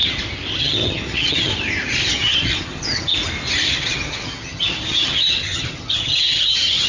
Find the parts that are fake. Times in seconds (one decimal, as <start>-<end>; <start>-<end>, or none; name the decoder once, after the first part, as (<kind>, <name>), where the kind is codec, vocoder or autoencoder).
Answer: 0.6-1.5 (vocoder, HiFi-GAN); 2.1-3.1; 3.7-6.9